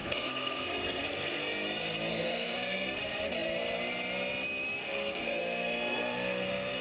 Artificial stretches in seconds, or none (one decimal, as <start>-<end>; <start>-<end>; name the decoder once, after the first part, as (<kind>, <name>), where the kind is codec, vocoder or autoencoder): 0.0-1.4 (codec, SNAC); 2.1-3.0; 4.8-6.8